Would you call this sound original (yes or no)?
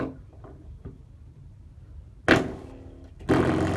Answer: yes